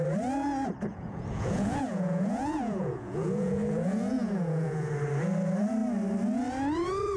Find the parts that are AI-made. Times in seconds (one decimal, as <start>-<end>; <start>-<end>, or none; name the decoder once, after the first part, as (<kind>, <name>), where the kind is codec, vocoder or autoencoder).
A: 0.9-4.9 (vocoder, Vocos)